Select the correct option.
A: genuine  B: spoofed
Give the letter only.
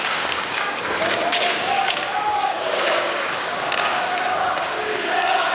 B